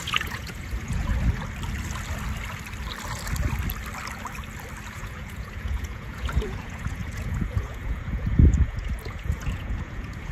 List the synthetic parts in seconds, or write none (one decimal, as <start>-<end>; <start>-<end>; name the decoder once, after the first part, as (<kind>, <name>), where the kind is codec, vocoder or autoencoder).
0.0-1.1 (vocoder, Vocos); 4.9-10.3